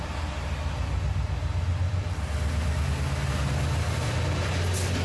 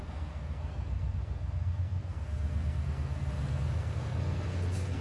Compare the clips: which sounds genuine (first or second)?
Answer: first